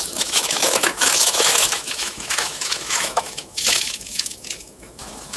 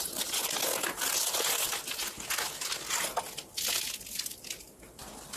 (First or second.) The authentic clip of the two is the second